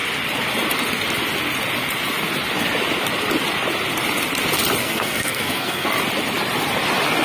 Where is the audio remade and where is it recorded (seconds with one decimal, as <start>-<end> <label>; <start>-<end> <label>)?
0.0-4.8 recorded; 4.8-5.9 remade; 5.9-7.2 recorded